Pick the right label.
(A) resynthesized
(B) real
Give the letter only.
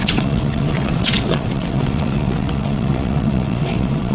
A